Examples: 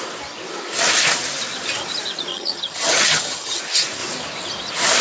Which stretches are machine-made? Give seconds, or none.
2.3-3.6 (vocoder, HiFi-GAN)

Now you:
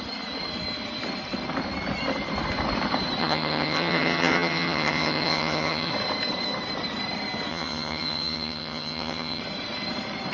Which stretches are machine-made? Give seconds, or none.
3.2-5.9 (vocoder, HiFi-GAN); 7.5-9.4

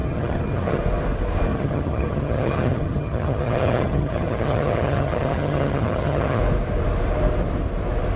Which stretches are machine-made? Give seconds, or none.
0.0-0.8 (vocoder, HiFi-GAN); 1.5-6.4

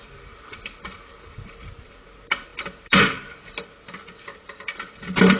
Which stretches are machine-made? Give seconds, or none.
none

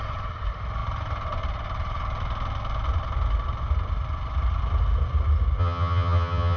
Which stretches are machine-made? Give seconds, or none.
5.6-6.6 (vocoder, HiFi-GAN)

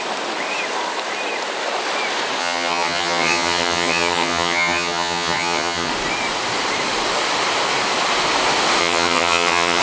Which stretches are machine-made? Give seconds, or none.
2.4-5.9 (vocoder, HiFi-GAN); 8.8-9.8